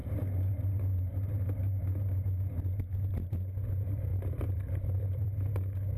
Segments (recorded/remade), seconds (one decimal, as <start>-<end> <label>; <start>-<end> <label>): 0.0-4.1 recorded; 4.1-5.5 remade; 5.5-6.0 recorded